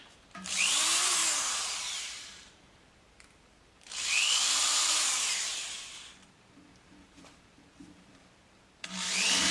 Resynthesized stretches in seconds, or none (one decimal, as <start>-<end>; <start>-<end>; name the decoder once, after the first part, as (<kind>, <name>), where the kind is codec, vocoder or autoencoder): 0.0-9.5 (vocoder, BigVGAN v2)

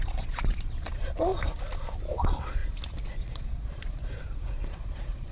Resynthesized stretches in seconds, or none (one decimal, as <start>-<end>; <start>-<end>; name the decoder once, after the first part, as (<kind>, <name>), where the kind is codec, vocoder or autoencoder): 0.0-1.3 (vocoder, Vocos); 2.1-2.6; 3.2-5.3

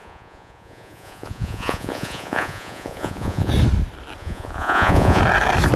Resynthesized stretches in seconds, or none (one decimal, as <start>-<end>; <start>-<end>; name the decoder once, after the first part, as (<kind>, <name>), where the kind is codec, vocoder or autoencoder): 0.0-3.5 (vocoder, Vocos); 4.2-5.2

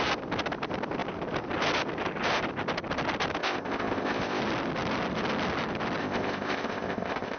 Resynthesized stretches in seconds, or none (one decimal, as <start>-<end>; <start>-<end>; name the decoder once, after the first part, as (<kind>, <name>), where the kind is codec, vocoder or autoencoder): 3.4-4.4 (codec, ZipCodec); 6.0-7.4